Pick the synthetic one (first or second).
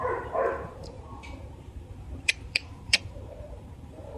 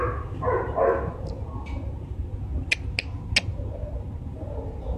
first